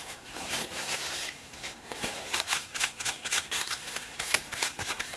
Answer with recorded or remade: remade